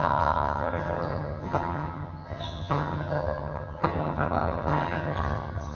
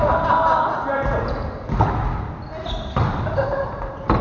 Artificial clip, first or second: first